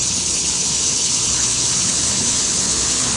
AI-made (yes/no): yes